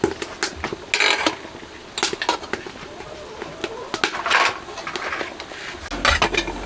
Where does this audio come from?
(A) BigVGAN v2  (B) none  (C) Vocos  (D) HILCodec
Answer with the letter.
B